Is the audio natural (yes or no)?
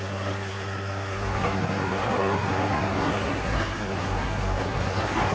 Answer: no